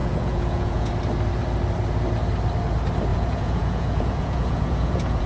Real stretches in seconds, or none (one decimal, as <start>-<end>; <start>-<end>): 0.9-3.1